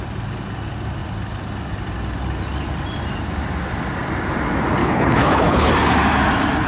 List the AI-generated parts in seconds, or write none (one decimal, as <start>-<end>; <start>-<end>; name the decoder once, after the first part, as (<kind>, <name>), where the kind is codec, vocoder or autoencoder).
4.8-5.7 (codec, HILCodec)